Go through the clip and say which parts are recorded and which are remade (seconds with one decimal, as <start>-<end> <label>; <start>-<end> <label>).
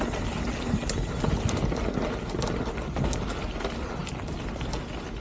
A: 0.0-5.2 recorded